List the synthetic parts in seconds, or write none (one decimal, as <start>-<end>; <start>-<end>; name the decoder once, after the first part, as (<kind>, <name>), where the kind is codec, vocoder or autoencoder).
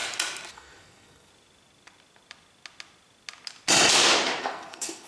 0.5-1.3 (codec, SNAC); 4.4-5.1